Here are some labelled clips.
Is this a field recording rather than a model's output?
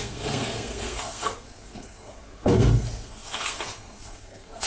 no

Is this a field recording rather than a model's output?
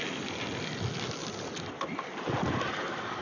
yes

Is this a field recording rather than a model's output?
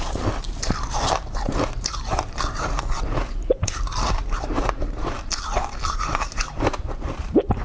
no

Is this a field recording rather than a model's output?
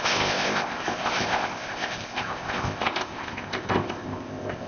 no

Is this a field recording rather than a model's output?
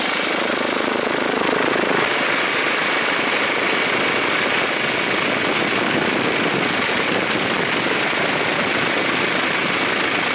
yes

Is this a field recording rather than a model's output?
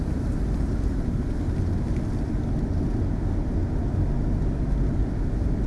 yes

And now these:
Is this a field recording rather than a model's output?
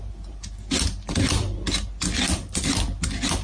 yes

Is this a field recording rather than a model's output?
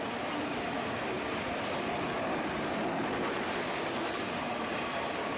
yes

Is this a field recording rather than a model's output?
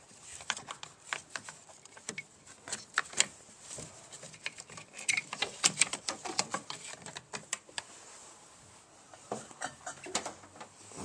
no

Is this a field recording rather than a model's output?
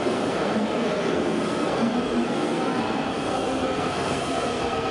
no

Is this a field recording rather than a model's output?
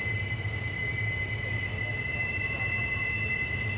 yes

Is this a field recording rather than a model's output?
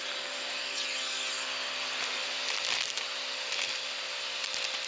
yes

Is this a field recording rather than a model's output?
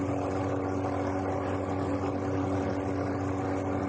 yes